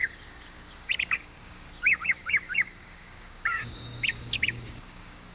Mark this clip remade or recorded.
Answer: remade